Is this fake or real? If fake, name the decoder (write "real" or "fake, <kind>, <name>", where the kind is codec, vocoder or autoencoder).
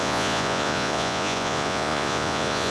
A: fake, vocoder, Vocos